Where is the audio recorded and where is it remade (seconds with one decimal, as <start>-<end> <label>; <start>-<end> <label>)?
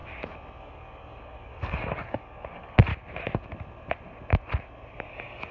0.0-0.6 recorded; 0.6-2.9 remade; 2.9-5.5 recorded